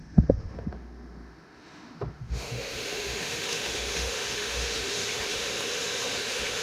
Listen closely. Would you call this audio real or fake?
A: fake